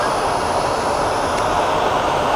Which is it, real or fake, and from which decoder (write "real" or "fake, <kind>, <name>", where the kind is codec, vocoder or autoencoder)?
real